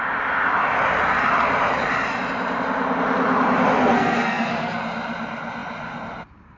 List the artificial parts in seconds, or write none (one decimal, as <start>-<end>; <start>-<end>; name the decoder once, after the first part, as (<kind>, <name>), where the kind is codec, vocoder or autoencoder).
3.8-4.8 (codec, SNAC)